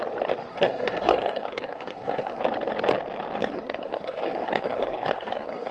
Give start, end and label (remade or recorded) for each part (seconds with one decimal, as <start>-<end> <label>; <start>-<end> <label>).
0.0-0.5 recorded; 0.5-2.4 remade; 2.4-3.4 recorded; 3.4-5.7 remade